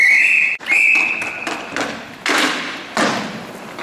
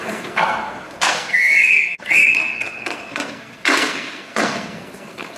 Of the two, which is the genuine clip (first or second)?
first